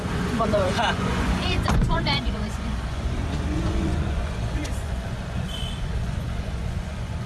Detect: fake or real fake